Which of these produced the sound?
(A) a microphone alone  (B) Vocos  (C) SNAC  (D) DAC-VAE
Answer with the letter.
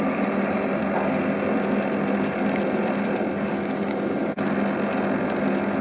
A